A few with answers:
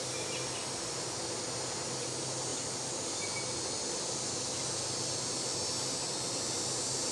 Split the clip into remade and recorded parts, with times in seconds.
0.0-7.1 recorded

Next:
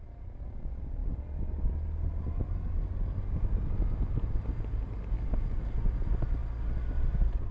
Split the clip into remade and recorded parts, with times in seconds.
0.0-6.4 recorded; 6.4-7.5 remade